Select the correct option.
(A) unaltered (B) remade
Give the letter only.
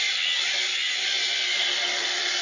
A